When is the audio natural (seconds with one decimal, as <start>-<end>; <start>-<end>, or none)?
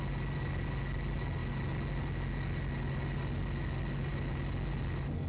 0.0-5.3